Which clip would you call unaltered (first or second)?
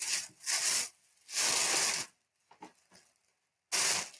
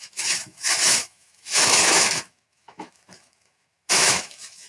first